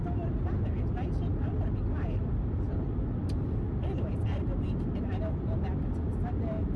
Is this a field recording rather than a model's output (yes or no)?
yes